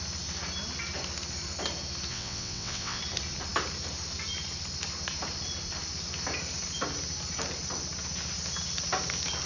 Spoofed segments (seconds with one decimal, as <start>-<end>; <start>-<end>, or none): 2.1-3.0